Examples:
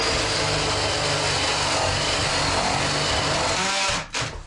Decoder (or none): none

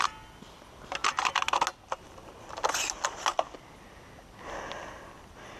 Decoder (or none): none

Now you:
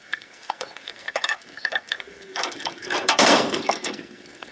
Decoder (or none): codec, SNAC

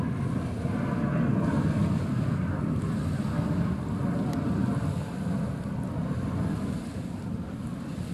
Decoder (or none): none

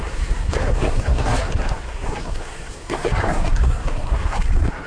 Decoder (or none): codec, SNAC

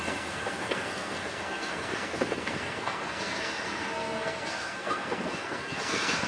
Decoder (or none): codec, SNAC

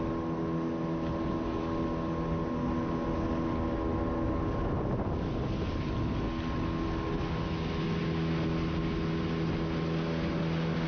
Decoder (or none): none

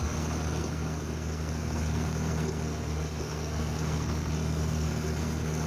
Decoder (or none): codec, SNAC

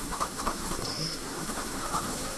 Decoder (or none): codec, SNAC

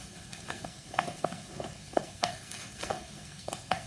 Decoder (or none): codec, SNAC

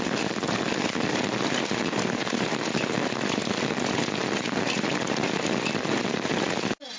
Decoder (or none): none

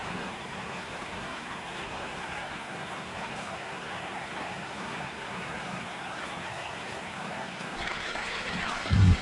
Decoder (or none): codec, SNAC